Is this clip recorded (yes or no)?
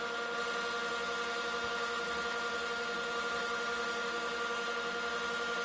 yes